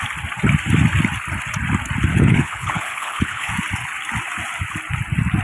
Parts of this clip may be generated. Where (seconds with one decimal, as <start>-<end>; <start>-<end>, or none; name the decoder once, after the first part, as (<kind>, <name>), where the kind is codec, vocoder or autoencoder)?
2.1-3.5 (codec, HILCodec)